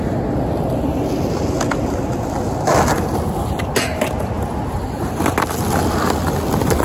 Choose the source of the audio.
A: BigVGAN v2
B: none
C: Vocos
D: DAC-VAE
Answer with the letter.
B